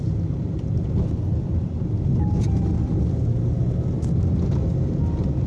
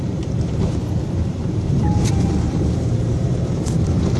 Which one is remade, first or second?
second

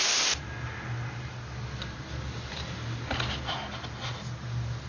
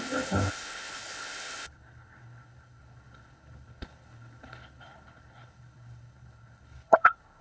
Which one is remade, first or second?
second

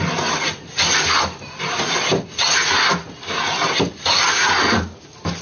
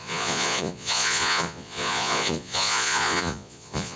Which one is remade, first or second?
second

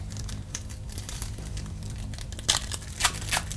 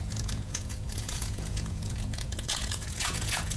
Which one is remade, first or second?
second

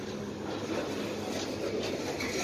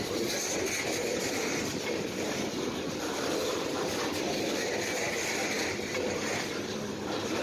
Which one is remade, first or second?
second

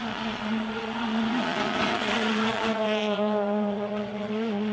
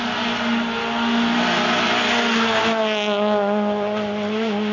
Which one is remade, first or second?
first